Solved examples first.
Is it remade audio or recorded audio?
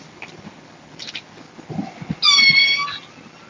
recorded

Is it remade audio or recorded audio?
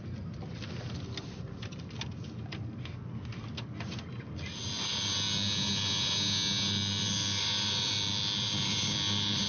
recorded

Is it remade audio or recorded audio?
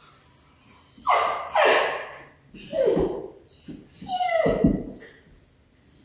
recorded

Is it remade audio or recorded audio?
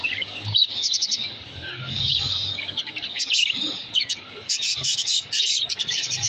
remade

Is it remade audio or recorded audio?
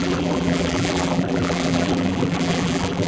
remade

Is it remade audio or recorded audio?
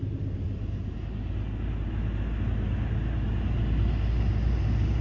recorded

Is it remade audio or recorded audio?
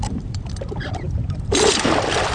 remade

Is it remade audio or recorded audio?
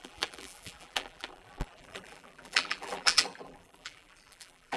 remade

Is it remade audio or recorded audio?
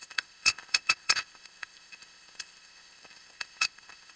remade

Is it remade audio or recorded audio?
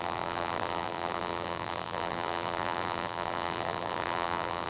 remade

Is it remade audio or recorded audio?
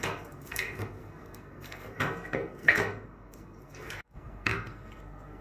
remade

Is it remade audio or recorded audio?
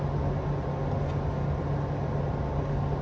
recorded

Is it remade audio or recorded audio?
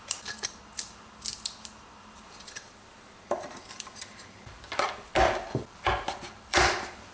remade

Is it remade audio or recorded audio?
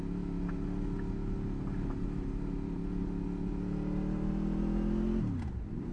recorded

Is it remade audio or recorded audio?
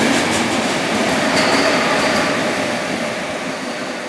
recorded